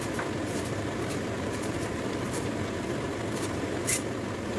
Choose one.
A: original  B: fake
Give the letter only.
B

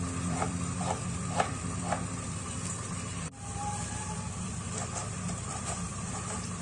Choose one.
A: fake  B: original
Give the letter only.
A